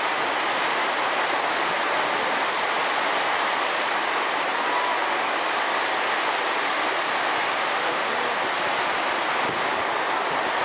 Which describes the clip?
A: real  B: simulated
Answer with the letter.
A